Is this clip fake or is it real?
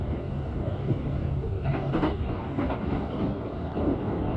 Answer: fake